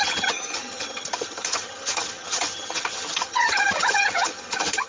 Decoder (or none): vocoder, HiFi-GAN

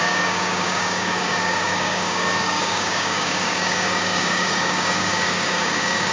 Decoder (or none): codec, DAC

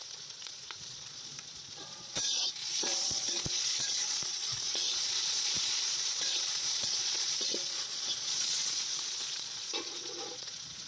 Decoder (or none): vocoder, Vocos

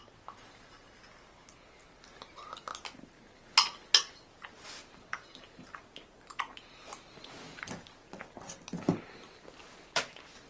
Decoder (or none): none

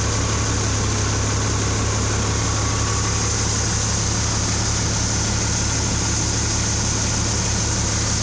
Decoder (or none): none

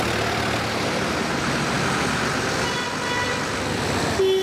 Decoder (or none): none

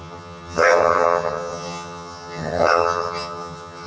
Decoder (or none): vocoder, HiFi-GAN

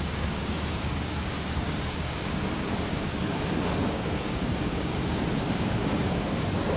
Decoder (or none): codec, DAC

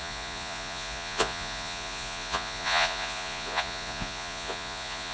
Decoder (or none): vocoder, Vocos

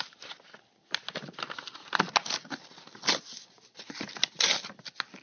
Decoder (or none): none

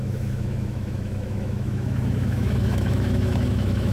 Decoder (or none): autoencoder, DAC-VAE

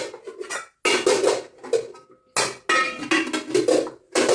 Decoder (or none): none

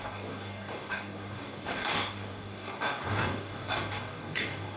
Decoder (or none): codec, DAC